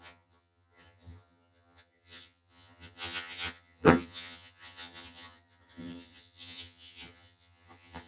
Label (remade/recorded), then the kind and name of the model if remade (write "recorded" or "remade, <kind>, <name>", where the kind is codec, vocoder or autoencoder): remade, vocoder, HiFi-GAN